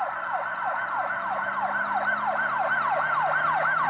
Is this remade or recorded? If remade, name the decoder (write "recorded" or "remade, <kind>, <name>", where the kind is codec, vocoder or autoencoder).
recorded